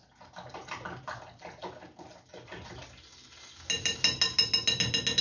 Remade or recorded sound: recorded